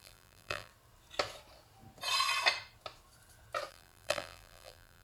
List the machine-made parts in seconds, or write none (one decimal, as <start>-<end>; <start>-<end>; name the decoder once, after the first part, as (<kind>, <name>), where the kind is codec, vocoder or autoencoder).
0.0-0.7 (vocoder, BigVGAN v2); 3.7-5.0